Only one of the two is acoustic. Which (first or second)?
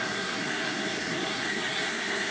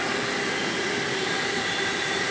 second